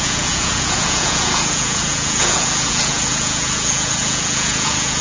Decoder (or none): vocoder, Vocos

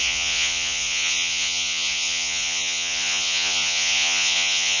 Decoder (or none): vocoder, Vocos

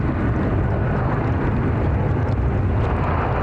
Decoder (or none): none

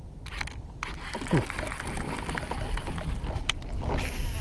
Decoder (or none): none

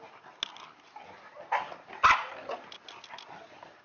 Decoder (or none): none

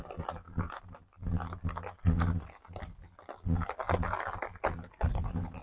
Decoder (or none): none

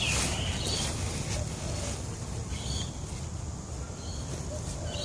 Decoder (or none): none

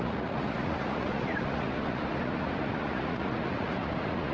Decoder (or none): vocoder, Vocos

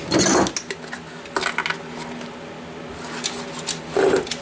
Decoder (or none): none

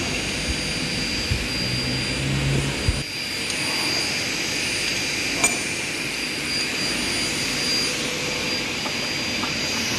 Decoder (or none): none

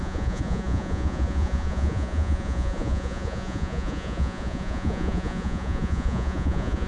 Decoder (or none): vocoder, Vocos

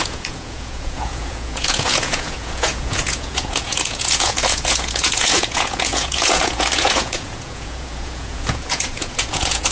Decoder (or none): vocoder, Vocos